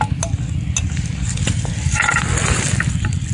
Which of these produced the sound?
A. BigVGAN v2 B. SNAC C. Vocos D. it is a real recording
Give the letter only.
D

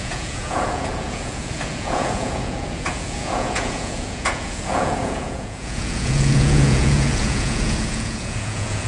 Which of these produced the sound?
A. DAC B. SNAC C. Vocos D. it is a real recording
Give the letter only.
C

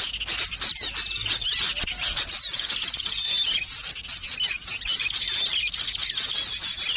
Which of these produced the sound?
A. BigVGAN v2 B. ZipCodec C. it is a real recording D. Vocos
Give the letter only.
C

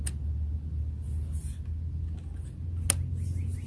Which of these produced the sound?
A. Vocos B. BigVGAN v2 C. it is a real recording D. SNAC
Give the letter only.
C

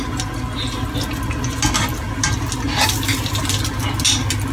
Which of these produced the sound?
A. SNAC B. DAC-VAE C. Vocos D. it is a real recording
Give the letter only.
D